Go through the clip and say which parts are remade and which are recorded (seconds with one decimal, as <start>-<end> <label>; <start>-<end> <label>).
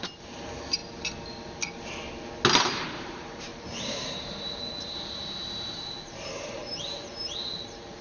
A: 0.0-0.8 remade; 0.8-2.6 recorded; 2.6-8.0 remade